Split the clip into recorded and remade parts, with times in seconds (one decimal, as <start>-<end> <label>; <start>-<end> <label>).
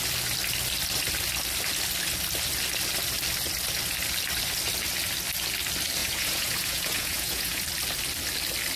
0.0-6.0 recorded; 6.0-7.6 remade; 7.6-8.8 recorded